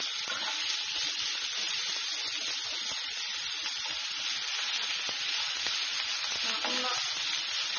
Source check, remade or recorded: recorded